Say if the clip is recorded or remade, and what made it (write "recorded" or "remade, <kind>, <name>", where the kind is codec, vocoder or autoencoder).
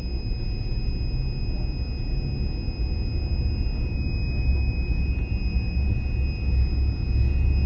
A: recorded